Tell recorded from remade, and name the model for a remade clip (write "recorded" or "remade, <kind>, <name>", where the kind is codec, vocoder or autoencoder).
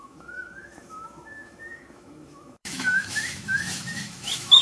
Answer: remade, autoencoder, DAC-VAE